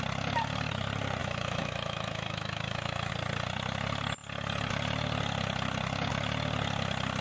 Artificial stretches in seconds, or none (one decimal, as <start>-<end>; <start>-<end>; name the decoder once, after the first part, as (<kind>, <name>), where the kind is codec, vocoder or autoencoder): 1.2-3.1 (autoencoder, DAC-VAE)